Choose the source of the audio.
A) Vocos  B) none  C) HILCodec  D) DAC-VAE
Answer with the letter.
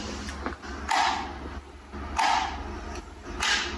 B